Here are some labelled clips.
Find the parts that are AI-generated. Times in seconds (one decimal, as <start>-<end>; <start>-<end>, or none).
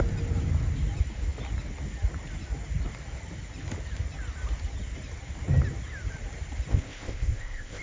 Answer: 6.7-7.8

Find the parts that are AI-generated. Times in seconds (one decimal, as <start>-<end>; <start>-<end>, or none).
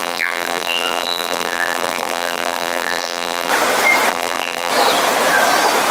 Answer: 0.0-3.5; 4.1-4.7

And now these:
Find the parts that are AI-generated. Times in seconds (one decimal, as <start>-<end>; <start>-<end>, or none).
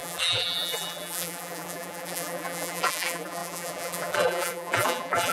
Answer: 0.0-5.3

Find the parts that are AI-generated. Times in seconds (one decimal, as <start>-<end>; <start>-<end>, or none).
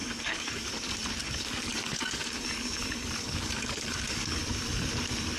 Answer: 0.0-0.7; 1.2-4.4